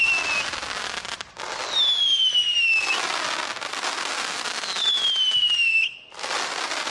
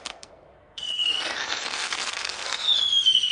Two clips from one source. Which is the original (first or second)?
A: first